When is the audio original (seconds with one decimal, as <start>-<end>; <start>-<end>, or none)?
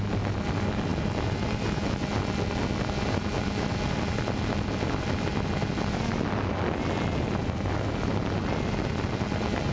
0.0-9.7